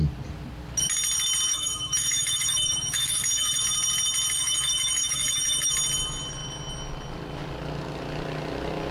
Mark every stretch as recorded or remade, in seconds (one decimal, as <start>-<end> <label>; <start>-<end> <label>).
0.0-1.5 recorded; 1.5-3.6 remade; 3.6-4.4 recorded; 4.4-5.7 remade; 5.7-8.9 recorded

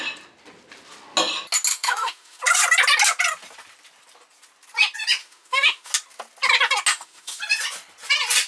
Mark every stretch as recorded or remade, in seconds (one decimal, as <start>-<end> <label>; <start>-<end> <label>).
0.0-1.7 recorded; 1.7-2.4 remade; 2.4-5.2 recorded; 5.2-5.9 remade; 5.9-6.9 recorded; 6.9-7.4 remade; 7.4-8.5 recorded

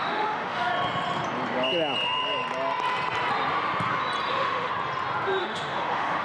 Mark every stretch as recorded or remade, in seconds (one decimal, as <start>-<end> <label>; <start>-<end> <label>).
0.0-0.7 remade; 0.7-4.3 recorded; 4.3-4.7 remade; 4.7-5.4 recorded; 5.4-6.2 remade